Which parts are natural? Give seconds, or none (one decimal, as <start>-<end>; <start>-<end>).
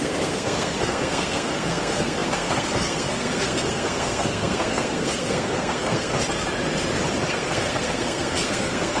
6.1-7.3